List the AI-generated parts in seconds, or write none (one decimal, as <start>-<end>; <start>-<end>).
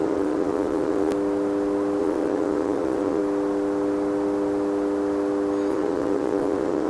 0.0-1.1; 2.0-3.2; 5.7-6.9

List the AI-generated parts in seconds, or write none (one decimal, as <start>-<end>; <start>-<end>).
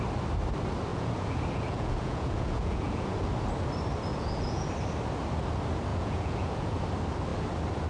0.9-3.3; 4.1-4.7; 5.9-6.8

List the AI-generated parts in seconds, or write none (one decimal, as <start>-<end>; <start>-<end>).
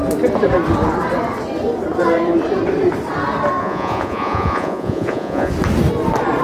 3.6-5.5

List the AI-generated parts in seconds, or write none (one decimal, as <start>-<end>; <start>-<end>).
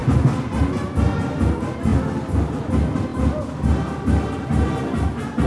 none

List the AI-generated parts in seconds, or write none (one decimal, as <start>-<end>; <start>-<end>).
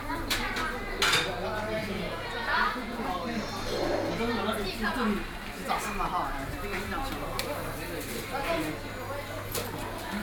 1.8-3.1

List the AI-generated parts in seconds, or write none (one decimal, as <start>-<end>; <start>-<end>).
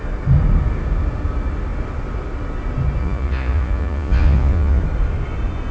3.0-4.8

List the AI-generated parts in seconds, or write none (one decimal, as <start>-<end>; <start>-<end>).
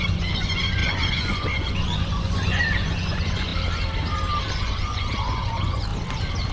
0.0-3.5; 4.5-5.9